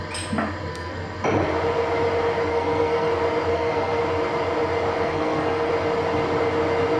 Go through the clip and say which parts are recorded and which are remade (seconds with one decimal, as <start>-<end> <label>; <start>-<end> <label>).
0.0-0.7 recorded; 0.7-1.2 remade; 1.2-2.5 recorded; 2.5-3.1 remade; 3.1-3.5 recorded; 3.5-4.0 remade; 4.0-5.0 recorded; 5.0-5.7 remade; 5.7-7.0 recorded